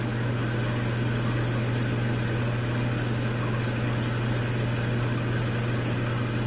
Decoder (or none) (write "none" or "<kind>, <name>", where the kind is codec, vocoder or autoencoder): none